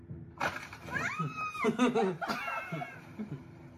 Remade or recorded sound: remade